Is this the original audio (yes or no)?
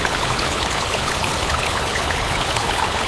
no